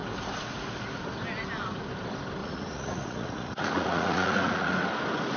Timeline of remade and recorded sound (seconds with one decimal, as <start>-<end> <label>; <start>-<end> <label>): 0.0-2.4 recorded; 2.4-4.7 remade; 4.7-5.4 recorded